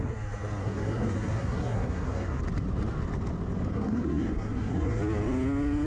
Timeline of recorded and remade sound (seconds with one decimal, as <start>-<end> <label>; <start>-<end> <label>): 0.0-0.6 recorded; 0.6-2.4 remade; 2.4-3.7 recorded; 3.7-5.0 remade; 5.0-5.9 recorded